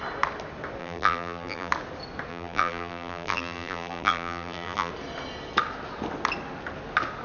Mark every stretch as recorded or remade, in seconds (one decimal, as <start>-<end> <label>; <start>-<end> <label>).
0.0-0.8 recorded; 0.8-1.7 remade; 1.7-2.3 recorded; 2.3-4.9 remade; 4.9-7.2 recorded